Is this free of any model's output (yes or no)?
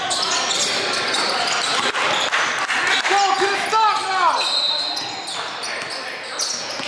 yes